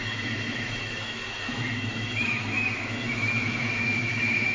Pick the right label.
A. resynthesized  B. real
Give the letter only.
A